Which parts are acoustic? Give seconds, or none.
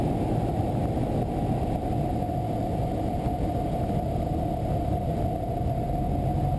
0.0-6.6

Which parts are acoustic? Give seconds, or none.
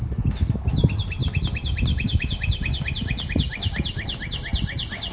0.0-5.1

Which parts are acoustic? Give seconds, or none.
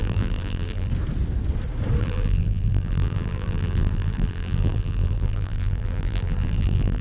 0.9-2.0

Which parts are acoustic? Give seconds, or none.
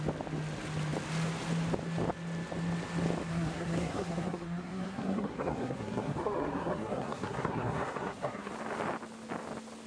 0.0-3.3; 8.5-9.9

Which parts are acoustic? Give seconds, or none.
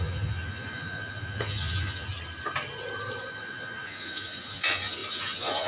2.1-3.4